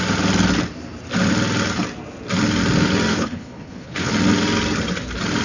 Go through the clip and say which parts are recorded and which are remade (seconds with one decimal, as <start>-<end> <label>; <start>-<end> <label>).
0.0-3.1 recorded; 3.1-4.1 remade; 4.1-5.4 recorded